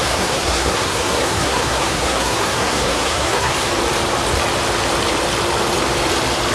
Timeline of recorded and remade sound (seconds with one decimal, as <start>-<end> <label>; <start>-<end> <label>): 0.0-3.7 remade; 3.7-6.5 recorded